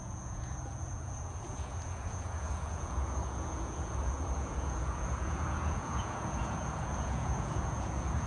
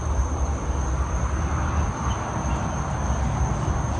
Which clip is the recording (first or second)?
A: second